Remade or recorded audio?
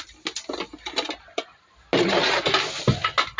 recorded